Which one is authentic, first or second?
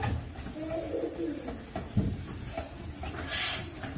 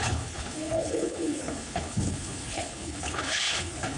first